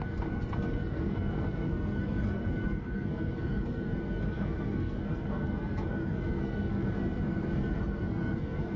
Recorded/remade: remade